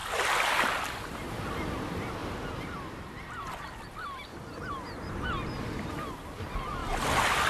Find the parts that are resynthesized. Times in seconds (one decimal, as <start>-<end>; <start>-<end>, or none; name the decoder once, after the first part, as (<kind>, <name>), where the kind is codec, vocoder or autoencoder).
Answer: none